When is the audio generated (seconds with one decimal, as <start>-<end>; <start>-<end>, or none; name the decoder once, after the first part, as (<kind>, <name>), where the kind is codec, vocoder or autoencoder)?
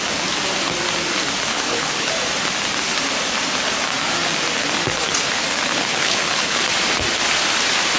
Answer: 1.5-2.1 (codec, HILCodec); 5.7-6.6